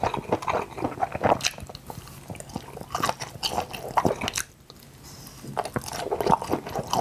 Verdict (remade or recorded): recorded